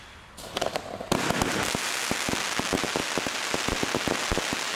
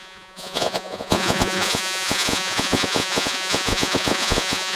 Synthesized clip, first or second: second